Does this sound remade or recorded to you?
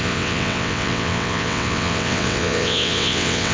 remade